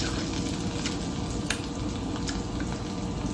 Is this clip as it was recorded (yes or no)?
yes